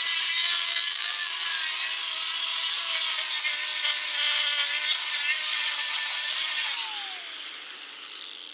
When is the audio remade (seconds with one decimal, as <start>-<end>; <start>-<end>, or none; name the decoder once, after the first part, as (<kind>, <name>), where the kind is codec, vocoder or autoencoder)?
0.4-1.3 (vocoder, BigVGAN v2)